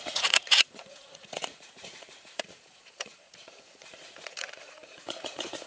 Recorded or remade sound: remade